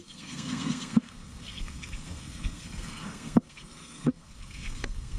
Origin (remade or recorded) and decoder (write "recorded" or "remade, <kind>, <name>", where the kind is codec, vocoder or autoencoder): remade, codec, SNAC